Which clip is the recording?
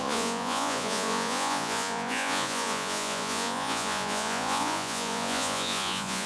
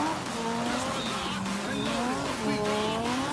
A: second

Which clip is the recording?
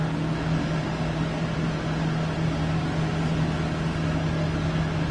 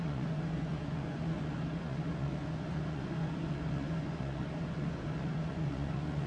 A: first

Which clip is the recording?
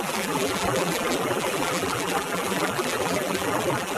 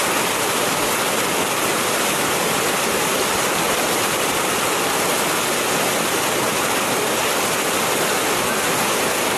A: second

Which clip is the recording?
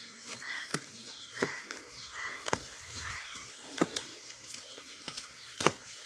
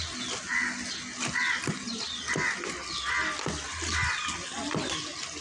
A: second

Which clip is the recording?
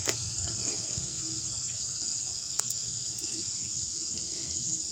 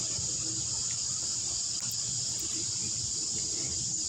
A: second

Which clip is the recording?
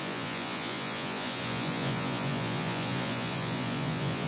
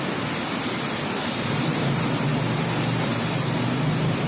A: second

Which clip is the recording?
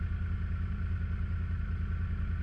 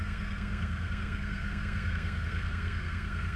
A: first